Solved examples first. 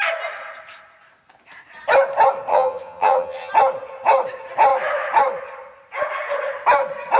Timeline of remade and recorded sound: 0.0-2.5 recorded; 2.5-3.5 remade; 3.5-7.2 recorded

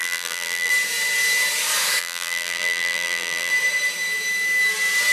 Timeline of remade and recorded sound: 0.0-0.7 remade; 0.7-2.0 recorded; 2.0-3.5 remade; 3.5-5.1 recorded

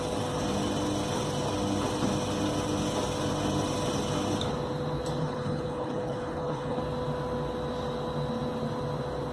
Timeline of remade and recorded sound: 0.0-5.2 recorded; 5.2-6.8 remade; 6.8-9.3 recorded

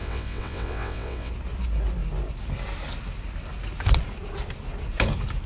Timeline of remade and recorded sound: 0.0-1.3 remade; 1.3-5.5 recorded

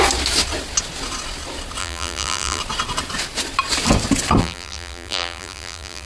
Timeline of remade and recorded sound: 0.0-1.8 recorded; 1.8-2.6 remade; 2.6-4.4 recorded; 4.4-6.1 remade